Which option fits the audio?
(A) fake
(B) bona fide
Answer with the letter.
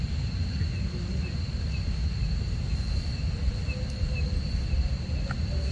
B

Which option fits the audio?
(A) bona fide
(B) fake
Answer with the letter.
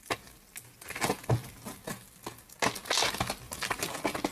A